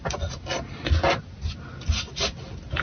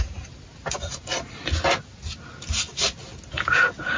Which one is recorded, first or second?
first